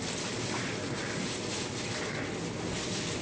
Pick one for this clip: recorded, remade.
recorded